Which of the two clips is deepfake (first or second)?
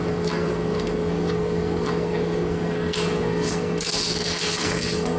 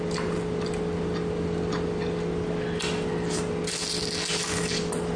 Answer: first